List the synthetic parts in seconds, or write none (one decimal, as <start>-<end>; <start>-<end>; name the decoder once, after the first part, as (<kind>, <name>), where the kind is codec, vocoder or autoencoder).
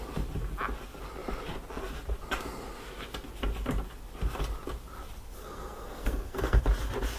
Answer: 5.4-6.6 (codec, SNAC)